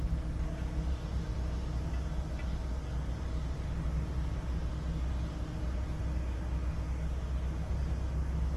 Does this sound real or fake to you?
real